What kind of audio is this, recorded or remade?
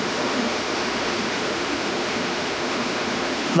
remade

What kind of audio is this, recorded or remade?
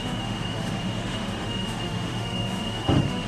remade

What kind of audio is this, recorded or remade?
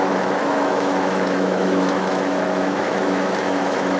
remade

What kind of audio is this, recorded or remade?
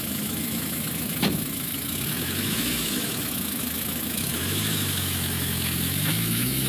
remade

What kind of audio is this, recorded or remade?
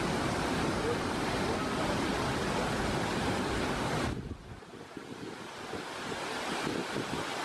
recorded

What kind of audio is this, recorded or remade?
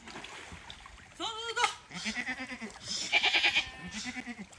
recorded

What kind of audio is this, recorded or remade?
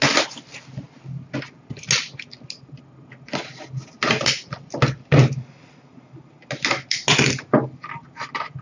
recorded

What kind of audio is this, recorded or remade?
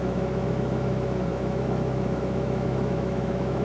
remade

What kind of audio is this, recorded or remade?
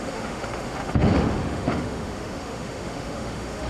remade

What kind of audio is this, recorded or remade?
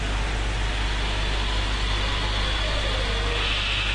recorded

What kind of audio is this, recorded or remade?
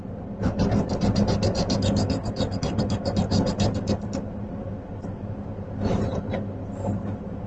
recorded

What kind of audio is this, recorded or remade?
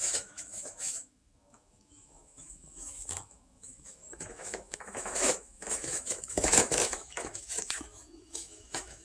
remade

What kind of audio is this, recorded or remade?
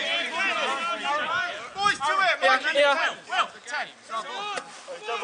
recorded